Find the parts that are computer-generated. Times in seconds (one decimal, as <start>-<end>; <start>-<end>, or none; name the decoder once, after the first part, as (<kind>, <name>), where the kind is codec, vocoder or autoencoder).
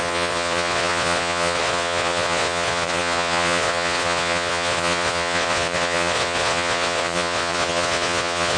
0.0-8.6 (vocoder, Vocos)